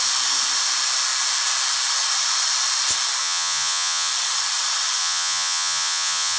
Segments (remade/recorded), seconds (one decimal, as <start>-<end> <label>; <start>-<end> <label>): 0.0-3.2 recorded; 3.2-4.1 remade; 4.1-5.0 recorded; 5.0-6.4 remade